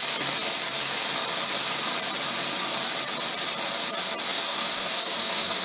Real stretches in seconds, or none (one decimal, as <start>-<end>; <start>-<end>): 0.0-4.3